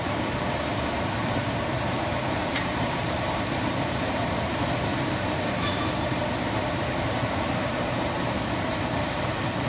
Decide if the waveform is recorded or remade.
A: remade